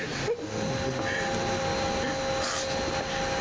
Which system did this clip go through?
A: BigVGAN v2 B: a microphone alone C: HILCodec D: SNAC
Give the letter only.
B